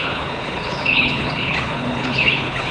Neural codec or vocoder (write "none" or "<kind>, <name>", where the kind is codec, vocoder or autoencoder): codec, HILCodec